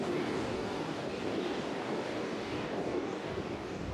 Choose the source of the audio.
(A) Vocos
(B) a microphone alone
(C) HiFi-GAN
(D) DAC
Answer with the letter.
D